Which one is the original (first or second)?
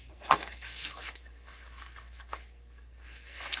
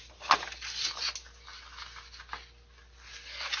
second